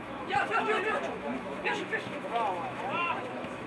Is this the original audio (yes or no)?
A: no